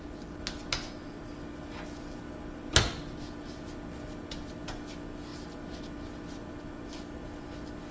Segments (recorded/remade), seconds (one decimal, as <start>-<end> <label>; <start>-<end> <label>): 0.0-7.9 recorded